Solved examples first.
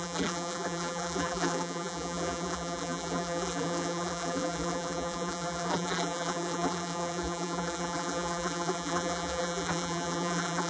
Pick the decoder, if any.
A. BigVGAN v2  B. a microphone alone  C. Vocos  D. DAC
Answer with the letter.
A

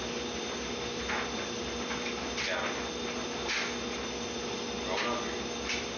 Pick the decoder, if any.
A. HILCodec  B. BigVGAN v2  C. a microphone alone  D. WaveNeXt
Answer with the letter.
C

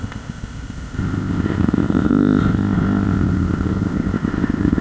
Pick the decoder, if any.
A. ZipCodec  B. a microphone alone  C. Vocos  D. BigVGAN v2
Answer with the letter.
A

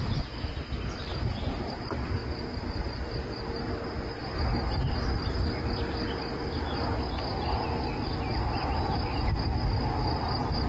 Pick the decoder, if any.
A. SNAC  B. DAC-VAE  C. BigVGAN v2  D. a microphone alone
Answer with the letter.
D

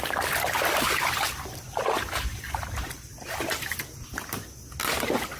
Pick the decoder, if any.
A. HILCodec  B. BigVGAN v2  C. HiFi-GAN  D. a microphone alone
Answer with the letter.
D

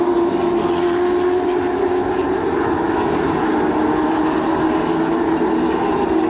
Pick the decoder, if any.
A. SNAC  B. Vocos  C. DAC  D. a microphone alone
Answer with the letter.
D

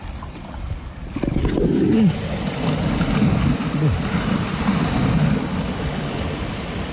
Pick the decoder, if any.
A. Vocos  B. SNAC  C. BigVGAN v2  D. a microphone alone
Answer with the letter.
D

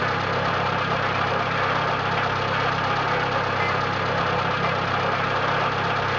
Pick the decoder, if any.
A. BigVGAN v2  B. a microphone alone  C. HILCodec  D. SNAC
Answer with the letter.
B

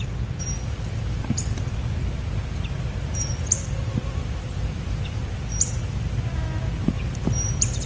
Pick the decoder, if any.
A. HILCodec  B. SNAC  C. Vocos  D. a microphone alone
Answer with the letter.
D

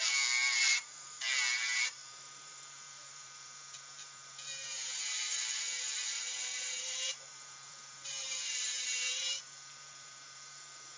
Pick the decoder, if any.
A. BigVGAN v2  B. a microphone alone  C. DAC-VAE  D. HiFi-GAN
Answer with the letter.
A